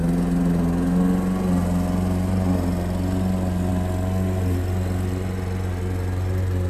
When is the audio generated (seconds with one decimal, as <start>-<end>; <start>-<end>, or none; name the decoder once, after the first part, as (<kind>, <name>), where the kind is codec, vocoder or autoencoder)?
none